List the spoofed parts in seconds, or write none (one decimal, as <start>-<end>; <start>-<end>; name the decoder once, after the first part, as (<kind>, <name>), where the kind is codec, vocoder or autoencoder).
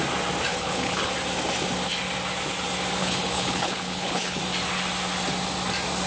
0.5-1.1 (codec, HILCodec); 3.0-4.4